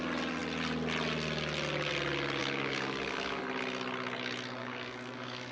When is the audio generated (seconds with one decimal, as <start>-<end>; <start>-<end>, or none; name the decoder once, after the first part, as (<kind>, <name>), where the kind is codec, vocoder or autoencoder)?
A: 2.4-3.4 (codec, DAC); 4.6-5.5